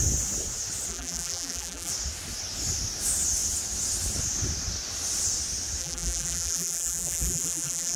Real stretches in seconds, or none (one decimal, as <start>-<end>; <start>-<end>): 0.0-0.9; 1.9-5.8